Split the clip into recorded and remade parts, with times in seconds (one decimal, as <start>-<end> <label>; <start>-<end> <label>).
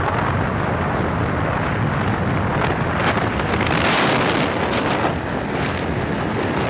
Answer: 0.0-6.7 recorded